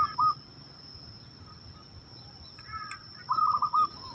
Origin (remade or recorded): recorded